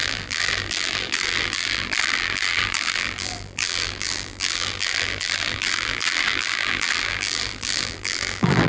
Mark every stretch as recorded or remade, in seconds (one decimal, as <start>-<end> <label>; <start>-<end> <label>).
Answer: 0.0-8.7 remade